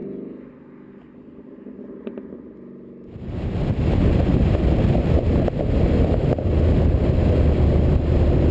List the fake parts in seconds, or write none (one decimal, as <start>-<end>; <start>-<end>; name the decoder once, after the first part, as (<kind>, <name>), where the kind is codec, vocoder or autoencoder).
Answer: none